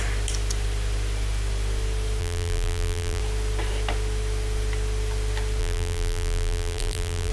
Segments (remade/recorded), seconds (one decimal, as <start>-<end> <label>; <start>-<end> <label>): 0.0-2.2 recorded; 2.2-3.2 remade; 3.2-5.6 recorded; 5.6-7.3 remade

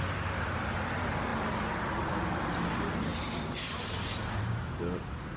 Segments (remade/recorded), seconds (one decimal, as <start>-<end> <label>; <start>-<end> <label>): 0.0-5.4 recorded